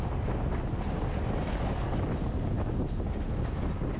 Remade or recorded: recorded